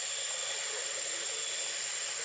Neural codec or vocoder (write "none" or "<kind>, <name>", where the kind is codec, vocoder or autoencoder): none